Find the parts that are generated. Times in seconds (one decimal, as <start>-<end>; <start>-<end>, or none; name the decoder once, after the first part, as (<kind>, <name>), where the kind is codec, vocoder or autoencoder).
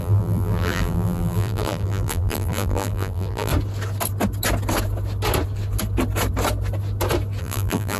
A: 0.0-3.5 (vocoder, BigVGAN v2); 7.4-8.0